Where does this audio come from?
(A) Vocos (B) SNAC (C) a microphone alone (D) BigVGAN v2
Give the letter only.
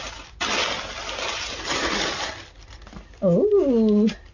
C